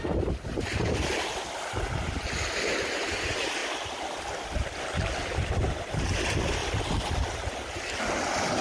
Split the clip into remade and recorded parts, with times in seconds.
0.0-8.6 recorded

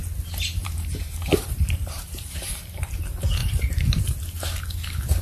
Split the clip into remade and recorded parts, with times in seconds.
0.0-0.6 recorded; 0.6-2.5 remade; 2.5-3.4 recorded; 3.4-4.0 remade; 4.0-5.2 recorded

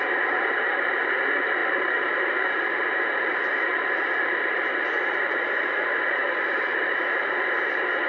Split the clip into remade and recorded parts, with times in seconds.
0.0-8.1 remade

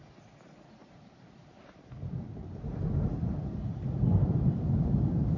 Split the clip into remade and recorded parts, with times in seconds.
0.0-0.8 recorded; 0.8-4.0 remade; 4.0-5.4 recorded